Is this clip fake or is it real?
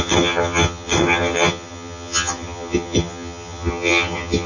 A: fake